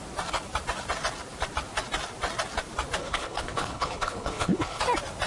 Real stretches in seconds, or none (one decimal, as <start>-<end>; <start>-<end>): 0.0-3.0; 4.8-5.3